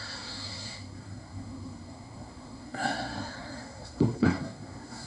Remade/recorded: remade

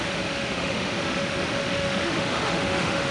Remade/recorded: remade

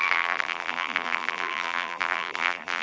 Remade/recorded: remade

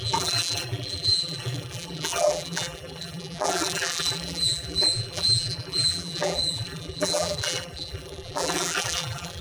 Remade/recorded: remade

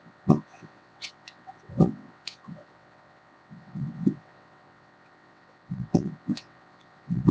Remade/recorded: remade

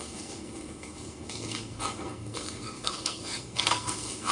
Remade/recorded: remade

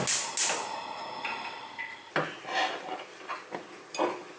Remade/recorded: recorded